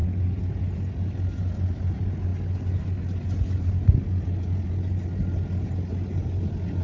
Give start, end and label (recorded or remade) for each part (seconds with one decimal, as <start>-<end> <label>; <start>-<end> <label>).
0.0-6.8 recorded